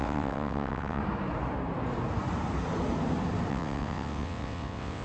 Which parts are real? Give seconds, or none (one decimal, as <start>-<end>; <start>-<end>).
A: 1.0-3.5